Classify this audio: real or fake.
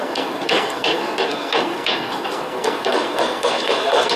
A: fake